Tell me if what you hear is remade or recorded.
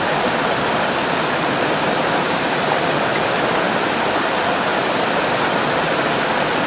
recorded